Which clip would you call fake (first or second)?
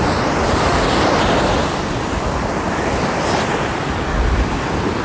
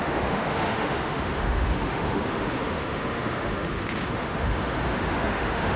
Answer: second